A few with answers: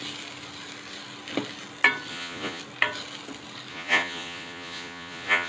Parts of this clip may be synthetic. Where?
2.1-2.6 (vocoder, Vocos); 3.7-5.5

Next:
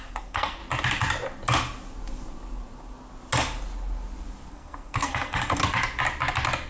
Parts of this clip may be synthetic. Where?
0.0-0.6 (codec, SNAC); 4.5-5.6

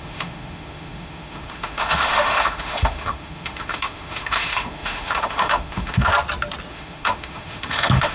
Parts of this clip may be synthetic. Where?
0.0-6.1 (autoencoder, DAC-VAE); 6.7-8.1

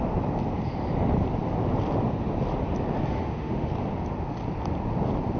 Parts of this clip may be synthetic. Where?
3.1-3.7 (autoencoder, DAC-VAE)

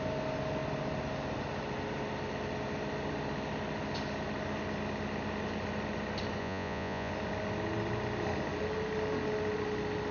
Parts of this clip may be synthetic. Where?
6.4-7.1 (vocoder, Vocos)

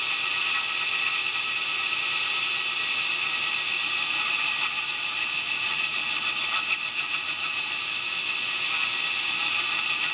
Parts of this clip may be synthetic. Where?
none